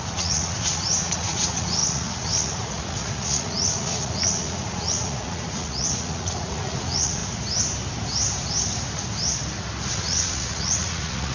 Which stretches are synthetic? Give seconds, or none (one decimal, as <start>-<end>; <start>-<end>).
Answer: 0.0-7.2; 9.9-11.3